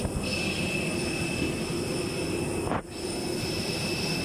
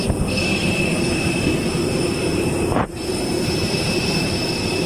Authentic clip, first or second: first